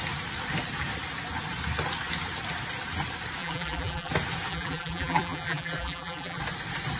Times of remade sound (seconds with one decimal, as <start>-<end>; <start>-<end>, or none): 3.4-4.1; 4.5-6.4